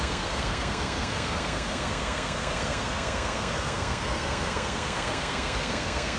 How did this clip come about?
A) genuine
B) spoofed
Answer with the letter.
B